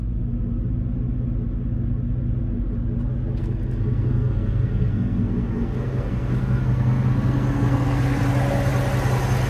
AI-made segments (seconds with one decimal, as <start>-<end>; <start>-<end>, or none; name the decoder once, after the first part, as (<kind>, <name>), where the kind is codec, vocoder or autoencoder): 3.4-8.2 (codec, SNAC)